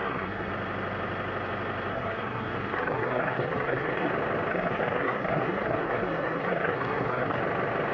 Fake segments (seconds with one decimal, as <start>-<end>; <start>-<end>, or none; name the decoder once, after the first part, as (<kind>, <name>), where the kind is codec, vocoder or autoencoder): 0.0-0.5 (codec, SNAC); 1.9-4.1; 4.5-7.4